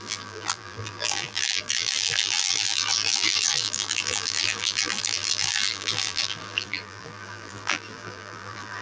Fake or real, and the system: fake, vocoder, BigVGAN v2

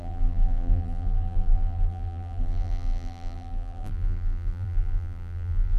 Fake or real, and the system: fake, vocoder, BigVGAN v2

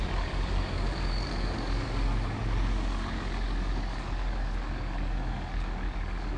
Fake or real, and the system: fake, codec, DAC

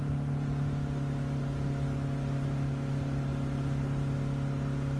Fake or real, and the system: real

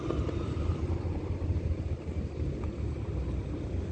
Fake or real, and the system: real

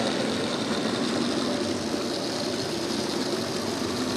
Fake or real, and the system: real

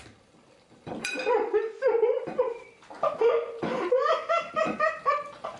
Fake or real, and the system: fake, vocoder, BigVGAN v2